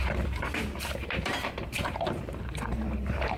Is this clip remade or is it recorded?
remade